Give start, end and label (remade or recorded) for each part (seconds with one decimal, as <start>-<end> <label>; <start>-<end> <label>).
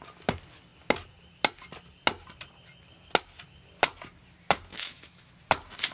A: 0.0-4.7 recorded; 4.7-5.3 remade; 5.3-5.9 recorded